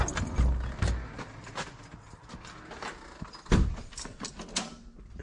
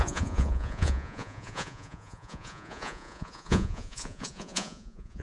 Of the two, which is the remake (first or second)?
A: second